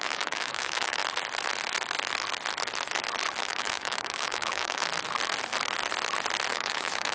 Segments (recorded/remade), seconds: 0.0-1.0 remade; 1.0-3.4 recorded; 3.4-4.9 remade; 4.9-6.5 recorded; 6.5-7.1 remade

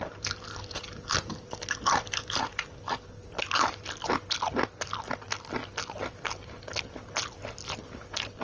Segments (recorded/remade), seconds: 0.0-1.3 remade; 1.3-8.4 recorded

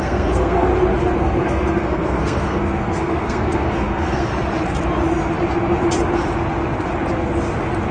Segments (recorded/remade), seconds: 0.0-0.7 remade; 0.7-1.2 recorded; 1.2-4.3 remade; 4.3-7.9 recorded

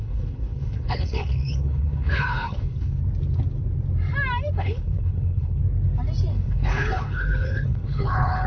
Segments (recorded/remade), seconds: 0.0-3.0 remade; 3.0-4.6 recorded; 4.6-5.6 remade; 5.6-6.3 recorded; 6.3-8.5 remade